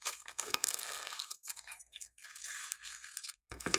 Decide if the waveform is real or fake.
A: fake